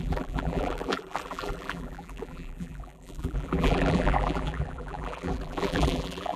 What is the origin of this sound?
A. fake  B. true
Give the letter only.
A